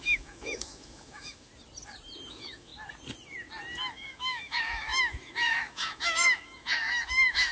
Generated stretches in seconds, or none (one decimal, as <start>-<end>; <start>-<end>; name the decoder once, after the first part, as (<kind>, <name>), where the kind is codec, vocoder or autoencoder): 0.0-1.5 (autoencoder, DAC-VAE); 2.3-2.7; 3.9-7.5